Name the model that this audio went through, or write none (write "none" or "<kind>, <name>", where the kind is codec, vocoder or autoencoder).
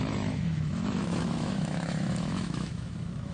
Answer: autoencoder, DAC-VAE